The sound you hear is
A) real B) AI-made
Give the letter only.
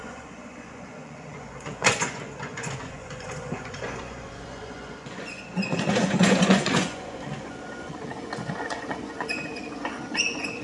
B